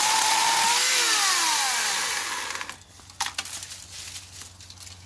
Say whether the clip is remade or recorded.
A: recorded